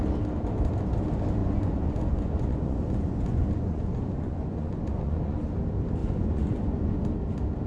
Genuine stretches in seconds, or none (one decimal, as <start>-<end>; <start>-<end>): 0.0-1.4; 5.5-6.0; 7.0-7.7